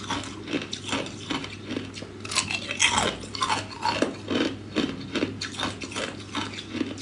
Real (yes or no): yes